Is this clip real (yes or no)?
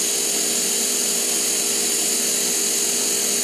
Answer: yes